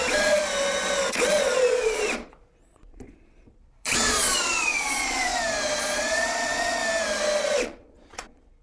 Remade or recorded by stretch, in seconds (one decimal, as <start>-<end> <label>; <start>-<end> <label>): 0.0-0.4 remade; 0.4-1.1 recorded; 1.1-5.3 remade; 5.3-5.8 recorded; 5.8-6.8 remade; 6.8-7.4 recorded; 7.4-8.6 remade